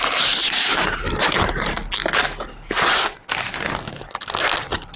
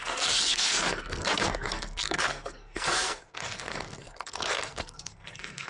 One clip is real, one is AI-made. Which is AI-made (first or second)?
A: second